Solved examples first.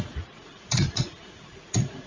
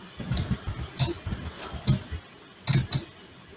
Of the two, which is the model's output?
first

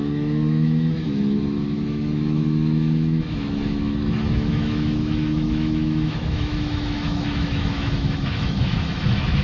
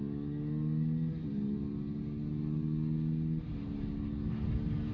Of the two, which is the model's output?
first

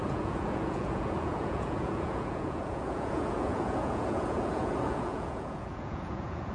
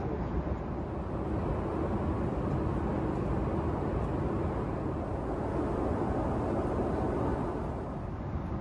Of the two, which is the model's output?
first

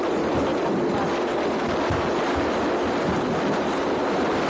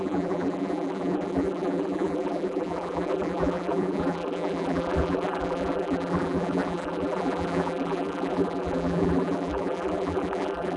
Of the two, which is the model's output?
second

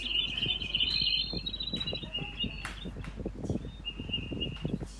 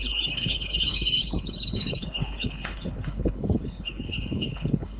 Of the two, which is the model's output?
second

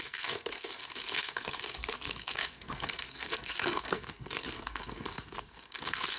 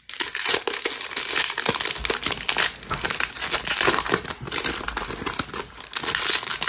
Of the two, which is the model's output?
first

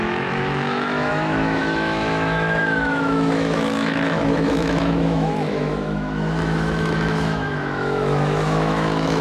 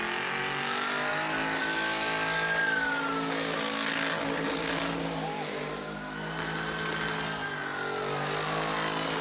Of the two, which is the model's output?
first